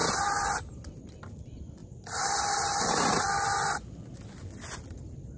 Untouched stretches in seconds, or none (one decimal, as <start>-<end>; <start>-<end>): 0.7-1.8; 3.2-5.4